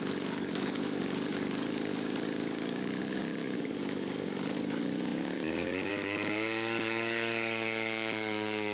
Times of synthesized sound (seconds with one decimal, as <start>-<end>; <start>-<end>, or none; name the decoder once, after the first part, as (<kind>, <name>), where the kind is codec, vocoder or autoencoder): 0.0-8.7 (codec, DAC)